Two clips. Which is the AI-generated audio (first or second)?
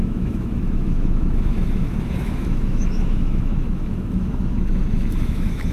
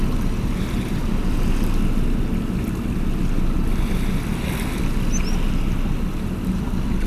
first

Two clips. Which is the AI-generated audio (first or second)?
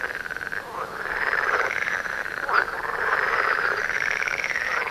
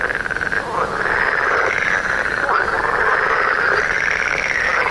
first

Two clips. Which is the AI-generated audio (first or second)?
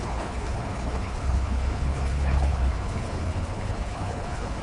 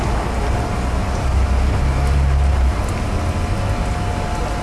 first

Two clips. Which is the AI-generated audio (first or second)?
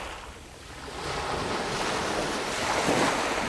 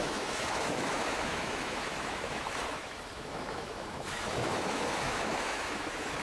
second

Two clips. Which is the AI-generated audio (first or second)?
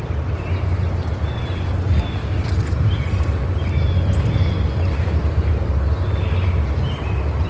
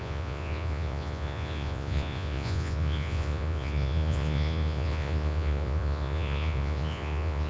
second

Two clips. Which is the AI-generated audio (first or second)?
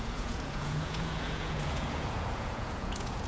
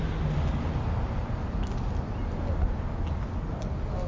first